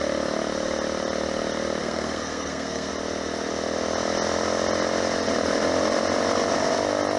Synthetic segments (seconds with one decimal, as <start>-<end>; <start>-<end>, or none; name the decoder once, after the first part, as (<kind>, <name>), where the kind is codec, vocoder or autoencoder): 1.8-2.9 (codec, SNAC)